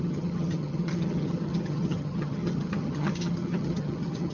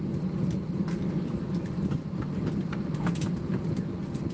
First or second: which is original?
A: second